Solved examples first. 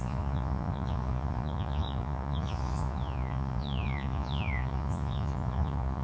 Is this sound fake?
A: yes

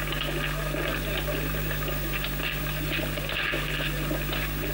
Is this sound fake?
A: no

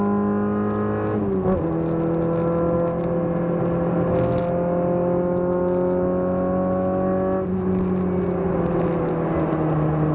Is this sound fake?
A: no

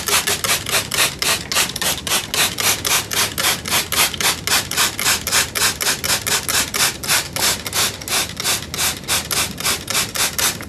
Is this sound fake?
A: no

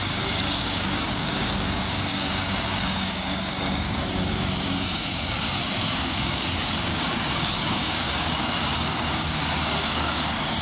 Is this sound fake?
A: yes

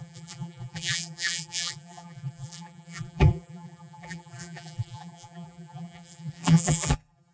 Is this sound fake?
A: yes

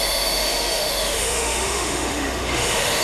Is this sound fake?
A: yes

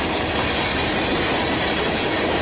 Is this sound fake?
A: no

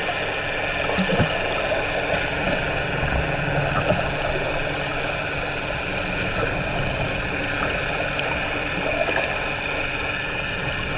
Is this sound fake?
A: no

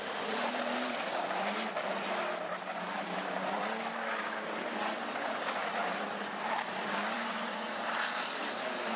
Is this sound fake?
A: yes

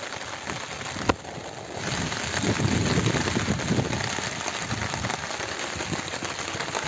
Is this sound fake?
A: no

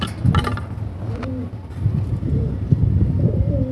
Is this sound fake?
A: no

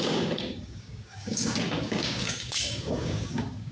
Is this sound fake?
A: yes